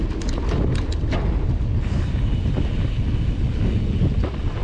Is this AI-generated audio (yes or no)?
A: no